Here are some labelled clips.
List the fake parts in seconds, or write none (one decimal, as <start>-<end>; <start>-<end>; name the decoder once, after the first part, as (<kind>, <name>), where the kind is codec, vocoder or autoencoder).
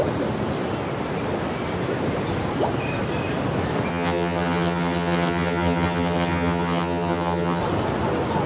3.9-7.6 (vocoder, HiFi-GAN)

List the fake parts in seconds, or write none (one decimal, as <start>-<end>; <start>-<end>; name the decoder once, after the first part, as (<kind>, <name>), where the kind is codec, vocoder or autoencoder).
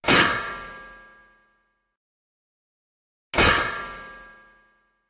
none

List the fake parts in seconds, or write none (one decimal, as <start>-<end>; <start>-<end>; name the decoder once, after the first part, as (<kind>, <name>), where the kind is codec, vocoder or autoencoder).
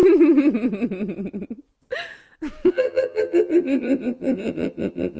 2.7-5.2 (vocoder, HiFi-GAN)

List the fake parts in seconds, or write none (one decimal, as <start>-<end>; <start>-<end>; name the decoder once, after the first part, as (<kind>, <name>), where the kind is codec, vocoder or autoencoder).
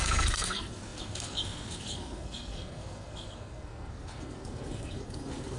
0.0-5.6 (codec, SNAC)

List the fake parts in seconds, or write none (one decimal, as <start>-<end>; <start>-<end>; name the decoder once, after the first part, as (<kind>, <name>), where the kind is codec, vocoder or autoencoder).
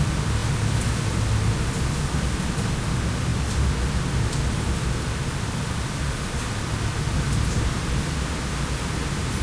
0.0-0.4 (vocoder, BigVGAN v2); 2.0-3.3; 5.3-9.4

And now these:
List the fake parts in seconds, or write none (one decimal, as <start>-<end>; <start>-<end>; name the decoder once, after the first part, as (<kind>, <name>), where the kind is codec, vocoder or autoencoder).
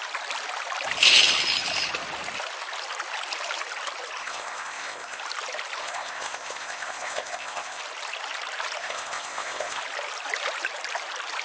4.2-5.2 (codec, ZipCodec); 5.8-7.8; 8.8-9.8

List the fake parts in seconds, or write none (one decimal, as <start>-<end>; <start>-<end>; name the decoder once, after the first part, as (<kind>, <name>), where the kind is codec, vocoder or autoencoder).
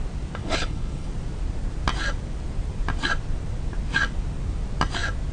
0.4-1.1 (codec, HILCodec)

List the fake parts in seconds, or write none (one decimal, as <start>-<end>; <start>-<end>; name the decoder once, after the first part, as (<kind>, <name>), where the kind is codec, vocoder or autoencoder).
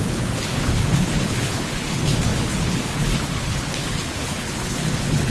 0.0-5.3 (codec, HILCodec)